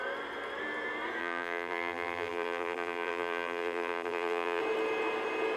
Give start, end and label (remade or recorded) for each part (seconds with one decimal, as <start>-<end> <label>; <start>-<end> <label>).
0.0-1.2 recorded; 1.2-4.6 remade; 4.6-5.6 recorded